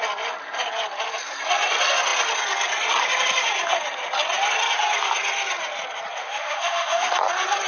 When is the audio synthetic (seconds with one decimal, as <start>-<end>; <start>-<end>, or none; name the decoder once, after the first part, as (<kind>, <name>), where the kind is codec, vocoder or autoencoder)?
6.2-7.1 (autoencoder, DAC-VAE)